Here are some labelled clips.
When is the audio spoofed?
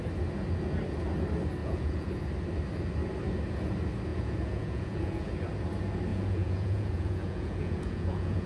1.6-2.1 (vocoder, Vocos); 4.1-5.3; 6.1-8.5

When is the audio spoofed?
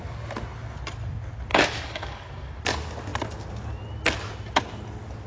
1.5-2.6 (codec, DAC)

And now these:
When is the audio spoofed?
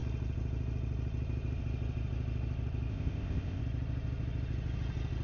2.9-3.6 (codec, ZipCodec)